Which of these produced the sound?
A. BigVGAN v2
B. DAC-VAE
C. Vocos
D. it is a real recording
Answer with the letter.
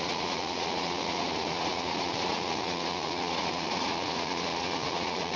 C